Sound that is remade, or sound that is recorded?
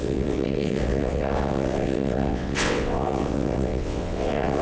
remade